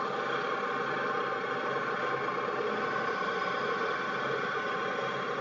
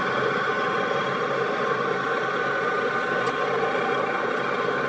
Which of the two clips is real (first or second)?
first